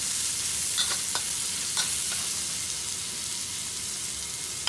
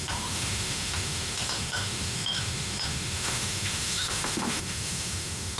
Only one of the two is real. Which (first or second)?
first